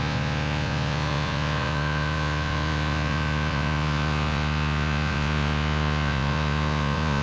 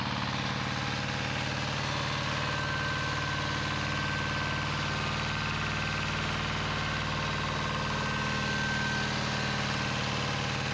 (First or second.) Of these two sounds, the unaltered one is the second